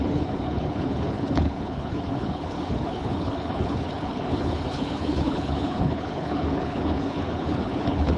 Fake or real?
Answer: fake